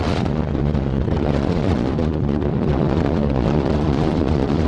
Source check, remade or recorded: remade